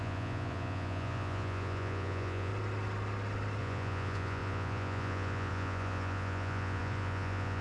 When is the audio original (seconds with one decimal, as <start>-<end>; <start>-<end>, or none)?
2.5-3.6